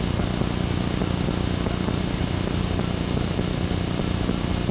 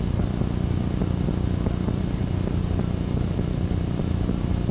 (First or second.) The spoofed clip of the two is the second